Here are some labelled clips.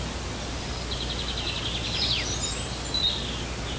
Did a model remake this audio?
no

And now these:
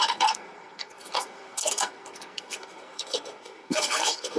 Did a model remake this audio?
yes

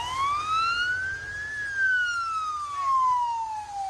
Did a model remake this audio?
no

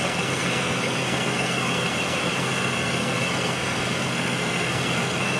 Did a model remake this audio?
yes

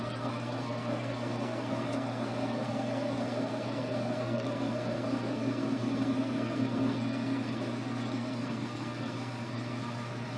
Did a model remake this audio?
yes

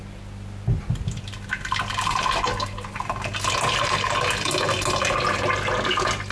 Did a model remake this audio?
no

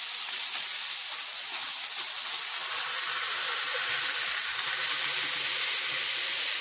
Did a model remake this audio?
no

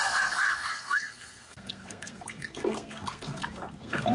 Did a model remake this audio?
yes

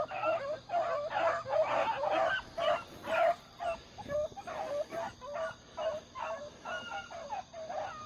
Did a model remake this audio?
no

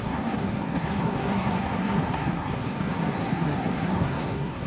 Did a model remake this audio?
yes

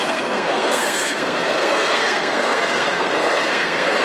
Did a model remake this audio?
yes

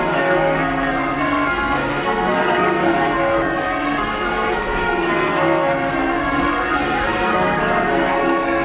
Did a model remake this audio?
yes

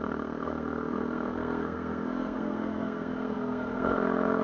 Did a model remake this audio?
yes